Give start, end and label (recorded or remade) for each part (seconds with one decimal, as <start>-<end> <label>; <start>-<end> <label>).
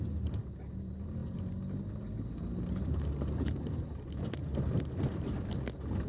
0.0-6.1 recorded